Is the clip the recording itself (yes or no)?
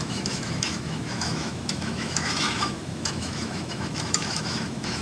no